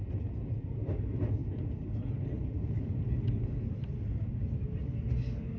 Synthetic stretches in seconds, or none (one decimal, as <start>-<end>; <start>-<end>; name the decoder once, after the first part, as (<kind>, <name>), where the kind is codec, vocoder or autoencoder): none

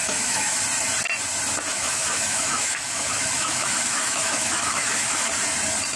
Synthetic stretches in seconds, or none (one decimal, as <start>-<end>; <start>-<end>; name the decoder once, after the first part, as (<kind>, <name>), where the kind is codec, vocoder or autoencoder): 0.0-0.6 (autoencoder, DAC-VAE); 1.7-5.3

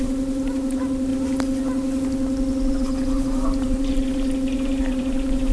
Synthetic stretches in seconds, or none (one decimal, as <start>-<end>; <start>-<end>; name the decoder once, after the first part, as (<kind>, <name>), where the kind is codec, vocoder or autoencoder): 0.0-1.1 (vocoder, BigVGAN v2); 2.7-5.5

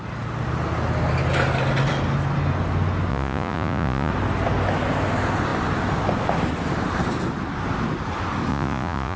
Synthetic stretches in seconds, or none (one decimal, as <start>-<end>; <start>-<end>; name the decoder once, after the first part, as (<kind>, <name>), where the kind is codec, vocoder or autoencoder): 3.1-4.1 (vocoder, Vocos); 8.5-9.2

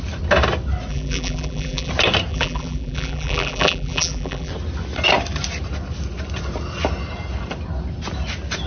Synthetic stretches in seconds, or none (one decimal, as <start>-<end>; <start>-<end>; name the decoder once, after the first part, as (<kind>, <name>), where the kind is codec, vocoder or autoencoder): 0.9-1.9 (vocoder, BigVGAN v2); 2.3-4.5

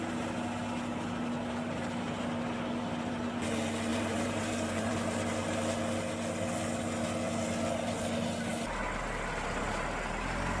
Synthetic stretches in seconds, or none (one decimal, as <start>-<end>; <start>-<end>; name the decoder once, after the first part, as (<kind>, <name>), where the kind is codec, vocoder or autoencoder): 3.9-4.9 (vocoder, BigVGAN v2)